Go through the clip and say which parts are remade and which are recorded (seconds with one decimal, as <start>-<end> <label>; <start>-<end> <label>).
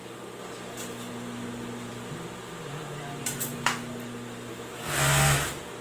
0.0-5.8 recorded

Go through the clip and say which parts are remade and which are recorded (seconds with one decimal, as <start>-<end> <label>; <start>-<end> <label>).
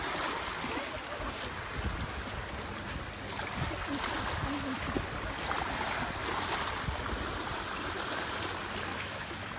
0.0-8.9 recorded; 8.9-9.6 remade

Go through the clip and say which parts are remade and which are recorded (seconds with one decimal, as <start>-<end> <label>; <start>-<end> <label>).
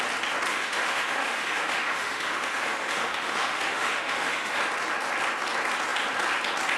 0.0-0.5 recorded; 0.5-4.6 remade; 4.6-6.8 recorded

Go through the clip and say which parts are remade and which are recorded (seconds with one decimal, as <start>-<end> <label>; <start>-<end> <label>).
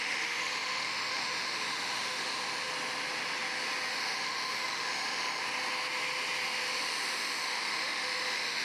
0.0-2.7 remade; 2.7-3.9 recorded; 3.9-5.4 remade; 5.4-6.5 recorded; 6.5-8.6 remade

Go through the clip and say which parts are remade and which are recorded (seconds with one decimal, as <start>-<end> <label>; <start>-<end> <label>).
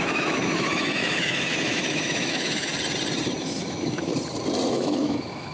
0.0-2.7 remade; 2.7-3.4 recorded; 3.4-4.1 remade; 4.1-4.7 recorded; 4.7-5.5 remade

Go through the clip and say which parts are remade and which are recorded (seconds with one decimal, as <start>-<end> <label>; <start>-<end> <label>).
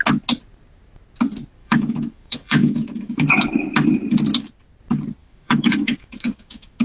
0.0-1.6 recorded; 1.6-3.4 remade; 3.4-5.2 recorded; 5.2-6.8 remade